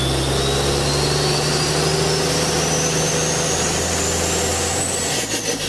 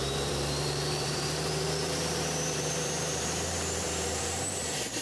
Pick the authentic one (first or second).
first